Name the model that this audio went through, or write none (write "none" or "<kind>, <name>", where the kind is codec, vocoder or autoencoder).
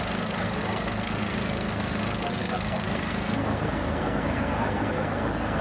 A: codec, SNAC